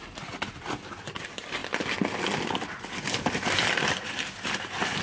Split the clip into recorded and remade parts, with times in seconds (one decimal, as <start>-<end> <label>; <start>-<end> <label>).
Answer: 0.0-5.0 recorded

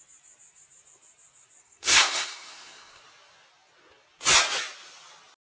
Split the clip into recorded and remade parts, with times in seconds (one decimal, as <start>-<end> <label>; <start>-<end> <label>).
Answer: 0.0-1.6 recorded; 1.6-3.0 remade; 3.0-5.4 recorded

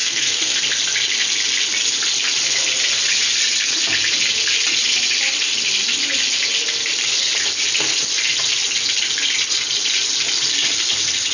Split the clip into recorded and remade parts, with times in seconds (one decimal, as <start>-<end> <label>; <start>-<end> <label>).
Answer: 0.0-0.6 remade; 0.6-11.3 recorded

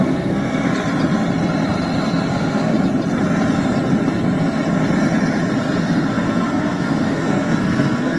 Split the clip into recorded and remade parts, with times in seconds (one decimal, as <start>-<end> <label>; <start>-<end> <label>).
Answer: 0.0-0.7 remade; 0.7-2.3 recorded; 2.3-2.7 remade; 2.7-5.8 recorded; 5.8-8.2 remade

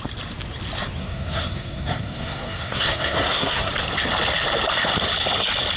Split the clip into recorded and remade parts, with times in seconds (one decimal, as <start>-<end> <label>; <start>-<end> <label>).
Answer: 0.0-1.0 recorded; 1.0-3.7 remade; 3.7-5.8 recorded

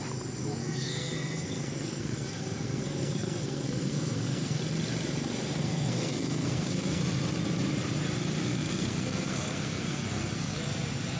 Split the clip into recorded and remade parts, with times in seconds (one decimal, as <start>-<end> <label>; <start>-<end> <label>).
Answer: 0.0-0.6 recorded; 0.6-4.6 remade; 4.6-5.6 recorded; 5.6-7.0 remade; 7.0-8.5 recorded; 8.5-10.6 remade; 10.6-11.2 recorded

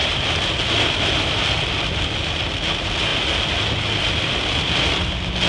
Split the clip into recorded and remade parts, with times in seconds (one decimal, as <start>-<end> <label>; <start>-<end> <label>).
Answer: 0.0-5.5 recorded

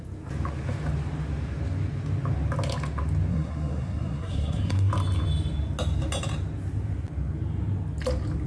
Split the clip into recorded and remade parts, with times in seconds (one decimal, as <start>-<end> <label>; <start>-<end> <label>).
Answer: 0.0-3.3 recorded; 3.3-4.9 remade; 4.9-8.5 recorded